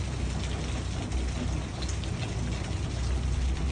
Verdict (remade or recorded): recorded